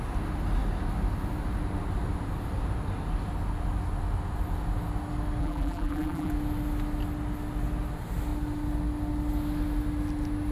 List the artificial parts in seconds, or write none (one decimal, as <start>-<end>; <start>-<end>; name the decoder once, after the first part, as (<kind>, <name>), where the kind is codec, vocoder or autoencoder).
5.4-6.3 (vocoder, BigVGAN v2)